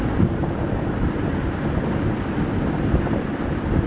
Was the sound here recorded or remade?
recorded